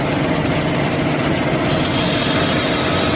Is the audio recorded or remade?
recorded